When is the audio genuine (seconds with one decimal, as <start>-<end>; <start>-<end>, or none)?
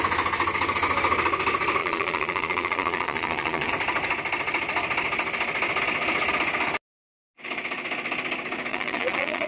0.0-1.8; 3.7-8.7